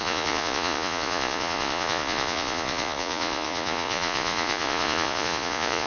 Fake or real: fake